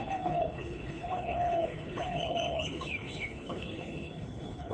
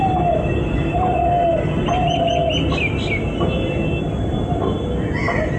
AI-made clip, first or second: first